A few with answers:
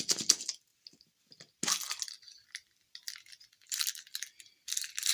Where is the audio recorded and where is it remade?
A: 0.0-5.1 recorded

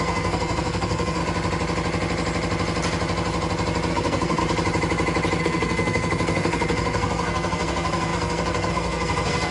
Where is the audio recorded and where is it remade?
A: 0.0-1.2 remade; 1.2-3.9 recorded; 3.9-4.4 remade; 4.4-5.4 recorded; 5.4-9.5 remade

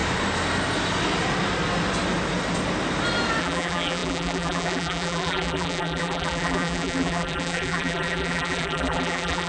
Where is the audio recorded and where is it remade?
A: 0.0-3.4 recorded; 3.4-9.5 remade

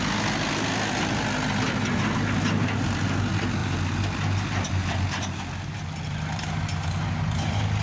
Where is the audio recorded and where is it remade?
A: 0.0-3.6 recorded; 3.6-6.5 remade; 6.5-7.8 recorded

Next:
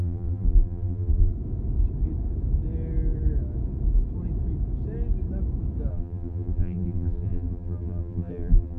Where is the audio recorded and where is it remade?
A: 0.0-1.3 remade; 1.3-5.9 recorded; 5.9-8.8 remade

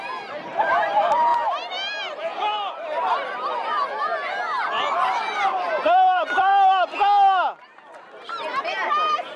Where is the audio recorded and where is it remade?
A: 0.0-1.3 remade; 1.3-4.7 recorded; 4.7-6.5 remade; 6.5-8.2 recorded; 8.2-9.4 remade

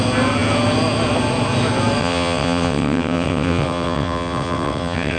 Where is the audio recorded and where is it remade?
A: 0.0-2.0 recorded; 2.0-5.2 remade